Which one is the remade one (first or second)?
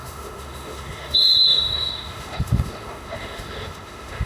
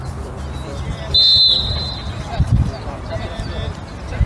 first